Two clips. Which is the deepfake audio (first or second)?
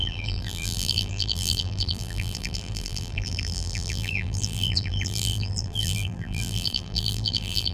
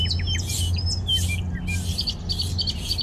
first